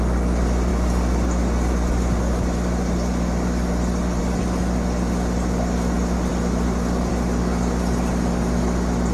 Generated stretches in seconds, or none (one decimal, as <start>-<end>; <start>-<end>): none